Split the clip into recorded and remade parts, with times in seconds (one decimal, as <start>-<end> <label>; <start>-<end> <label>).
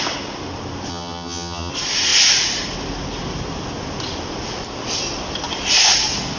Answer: 0.0-0.9 recorded; 0.9-1.7 remade; 1.7-6.4 recorded